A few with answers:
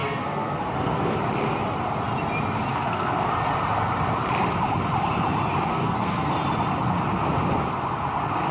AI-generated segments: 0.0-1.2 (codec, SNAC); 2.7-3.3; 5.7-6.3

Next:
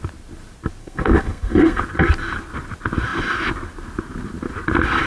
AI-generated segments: 0.8-1.8 (codec, SNAC)

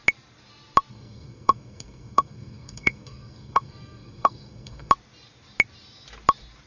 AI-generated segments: 0.9-4.9 (codec, SNAC)

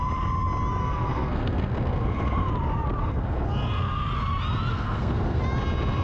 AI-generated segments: 0.8-2.5 (codec, SNAC); 3.0-3.5; 4.7-5.4

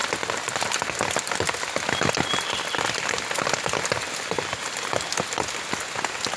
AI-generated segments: none

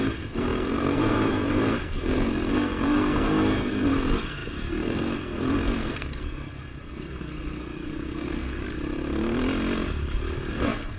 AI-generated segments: 0.0-8.6 (codec, SNAC); 10.5-11.0

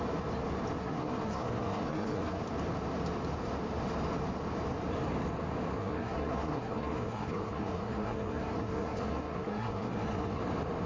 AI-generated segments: 0.8-2.4 (codec, SNAC); 5.8-10.4

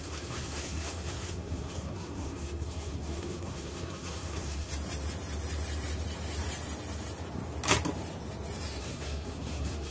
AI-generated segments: 0.0-4.7 (codec, SNAC); 8.8-9.9